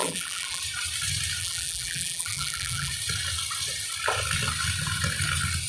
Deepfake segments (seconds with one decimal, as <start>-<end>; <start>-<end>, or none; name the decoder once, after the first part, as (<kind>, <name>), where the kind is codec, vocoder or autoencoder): 0.0-0.6 (vocoder, BigVGAN v2); 1.4-2.9

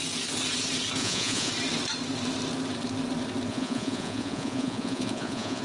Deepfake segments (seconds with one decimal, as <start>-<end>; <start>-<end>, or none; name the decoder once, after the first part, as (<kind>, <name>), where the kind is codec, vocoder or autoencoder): 1.0-1.5 (vocoder, Vocos); 3.5-5.6

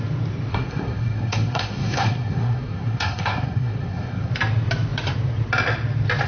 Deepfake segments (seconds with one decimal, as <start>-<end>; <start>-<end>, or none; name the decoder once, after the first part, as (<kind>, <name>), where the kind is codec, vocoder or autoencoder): 0.5-4.3 (codec, SNAC)

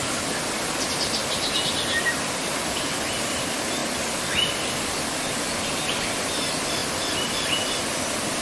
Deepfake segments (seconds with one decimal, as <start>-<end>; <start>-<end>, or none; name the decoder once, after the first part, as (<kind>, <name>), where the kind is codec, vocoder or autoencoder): 0.0-3.8 (vocoder, BigVGAN v2); 4.5-8.4

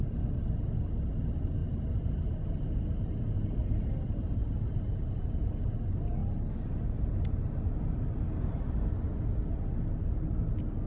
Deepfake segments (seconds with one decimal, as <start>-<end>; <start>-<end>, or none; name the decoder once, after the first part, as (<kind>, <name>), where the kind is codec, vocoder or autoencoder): 1.6-5.3 (vocoder, BigVGAN v2)

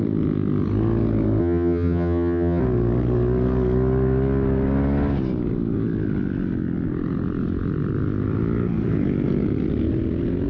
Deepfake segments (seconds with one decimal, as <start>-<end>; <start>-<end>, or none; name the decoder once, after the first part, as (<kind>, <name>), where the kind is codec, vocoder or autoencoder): 1.4-2.6 (vocoder, HiFi-GAN)

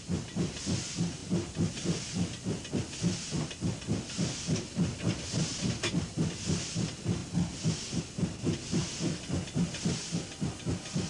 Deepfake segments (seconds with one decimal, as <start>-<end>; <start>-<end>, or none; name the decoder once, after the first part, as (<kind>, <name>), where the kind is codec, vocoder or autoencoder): none

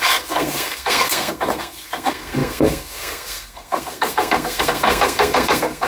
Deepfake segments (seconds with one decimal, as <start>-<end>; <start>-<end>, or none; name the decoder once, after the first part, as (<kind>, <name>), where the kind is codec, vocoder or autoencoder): 0.0-5.9 (codec, SNAC)